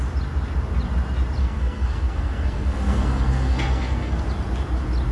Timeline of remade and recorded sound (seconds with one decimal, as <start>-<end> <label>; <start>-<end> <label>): 0.0-1.4 recorded; 1.4-4.2 remade; 4.2-5.1 recorded